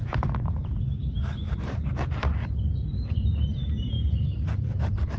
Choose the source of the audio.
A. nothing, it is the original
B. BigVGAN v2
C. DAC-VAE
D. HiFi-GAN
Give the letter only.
B